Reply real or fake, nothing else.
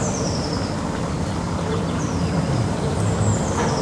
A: fake